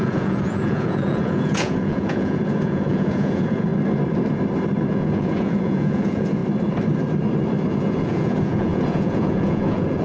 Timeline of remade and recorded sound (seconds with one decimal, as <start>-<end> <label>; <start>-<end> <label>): 0.0-3.7 remade; 3.7-4.9 recorded; 4.9-6.4 remade; 6.4-7.7 recorded; 7.7-10.0 remade